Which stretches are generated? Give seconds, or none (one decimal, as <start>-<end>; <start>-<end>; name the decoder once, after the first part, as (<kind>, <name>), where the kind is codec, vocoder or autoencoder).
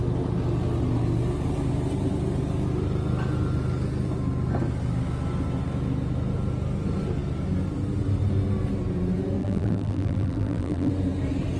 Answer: 9.4-10.9 (vocoder, BigVGAN v2)